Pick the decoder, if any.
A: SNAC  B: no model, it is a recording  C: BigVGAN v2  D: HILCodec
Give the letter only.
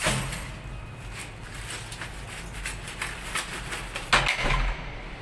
B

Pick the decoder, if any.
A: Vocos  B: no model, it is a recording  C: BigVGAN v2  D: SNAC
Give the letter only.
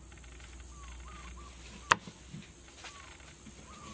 B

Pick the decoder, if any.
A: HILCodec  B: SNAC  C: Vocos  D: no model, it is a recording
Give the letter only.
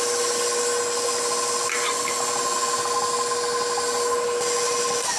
D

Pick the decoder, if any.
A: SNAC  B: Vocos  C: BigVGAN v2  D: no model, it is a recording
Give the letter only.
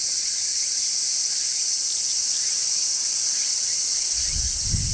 D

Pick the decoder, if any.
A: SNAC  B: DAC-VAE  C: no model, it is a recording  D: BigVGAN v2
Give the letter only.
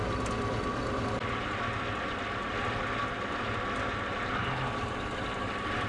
C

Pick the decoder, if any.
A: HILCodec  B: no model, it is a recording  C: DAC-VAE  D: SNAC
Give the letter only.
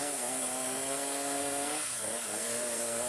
D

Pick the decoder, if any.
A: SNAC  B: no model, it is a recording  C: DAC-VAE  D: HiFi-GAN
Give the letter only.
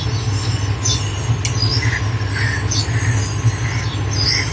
B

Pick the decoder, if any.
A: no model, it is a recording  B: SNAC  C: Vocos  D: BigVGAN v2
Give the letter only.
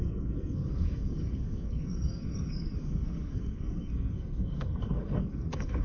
B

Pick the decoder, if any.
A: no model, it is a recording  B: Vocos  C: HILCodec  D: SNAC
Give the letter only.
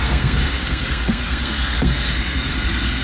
D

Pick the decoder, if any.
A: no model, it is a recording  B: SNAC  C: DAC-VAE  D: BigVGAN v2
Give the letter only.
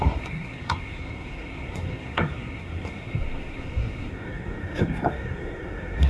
B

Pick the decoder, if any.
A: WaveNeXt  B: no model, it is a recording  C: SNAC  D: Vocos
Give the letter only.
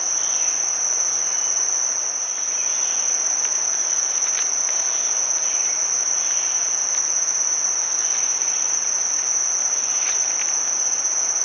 B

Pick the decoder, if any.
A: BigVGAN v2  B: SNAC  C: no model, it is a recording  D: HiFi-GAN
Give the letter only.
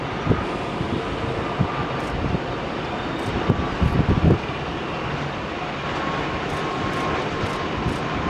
C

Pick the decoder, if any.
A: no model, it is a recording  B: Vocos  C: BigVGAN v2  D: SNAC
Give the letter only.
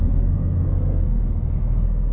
D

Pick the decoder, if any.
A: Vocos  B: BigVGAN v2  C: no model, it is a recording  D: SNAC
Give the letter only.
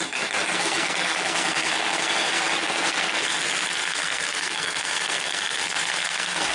D